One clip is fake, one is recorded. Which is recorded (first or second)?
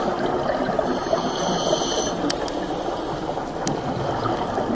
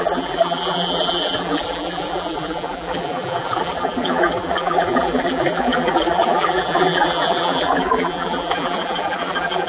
first